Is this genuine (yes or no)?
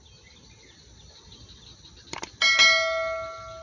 yes